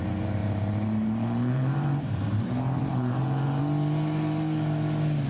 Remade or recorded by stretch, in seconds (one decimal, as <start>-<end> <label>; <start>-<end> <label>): 0.0-0.4 recorded; 0.4-3.6 remade; 3.6-5.3 recorded